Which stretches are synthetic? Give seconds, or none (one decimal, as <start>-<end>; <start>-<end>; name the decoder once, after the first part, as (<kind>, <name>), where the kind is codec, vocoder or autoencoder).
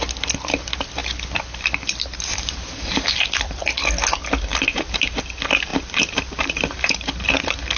2.3-3.2 (vocoder, BigVGAN v2); 4.5-5.2; 5.7-6.9